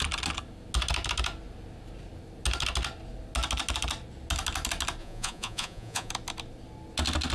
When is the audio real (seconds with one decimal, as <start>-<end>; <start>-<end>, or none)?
0.0-5.0; 6.1-7.3